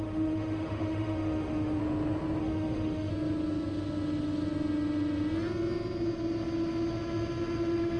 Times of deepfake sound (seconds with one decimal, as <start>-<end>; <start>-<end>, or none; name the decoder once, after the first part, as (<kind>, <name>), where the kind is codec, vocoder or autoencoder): 0.0-1.8 (autoencoder, DAC-VAE); 2.4-3.1

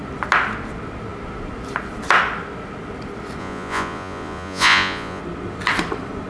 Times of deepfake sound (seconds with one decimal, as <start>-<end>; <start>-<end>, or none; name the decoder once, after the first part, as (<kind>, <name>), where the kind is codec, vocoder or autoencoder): 3.4-5.2 (vocoder, Vocos)

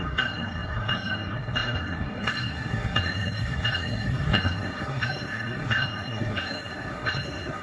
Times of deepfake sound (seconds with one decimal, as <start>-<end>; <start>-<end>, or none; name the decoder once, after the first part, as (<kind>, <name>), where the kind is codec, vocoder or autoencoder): 0.0-7.6 (codec, SNAC)

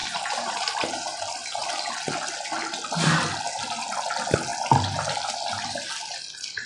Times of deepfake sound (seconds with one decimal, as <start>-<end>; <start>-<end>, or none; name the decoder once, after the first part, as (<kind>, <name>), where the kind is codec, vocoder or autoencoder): 0.0-1.2 (vocoder, BigVGAN v2)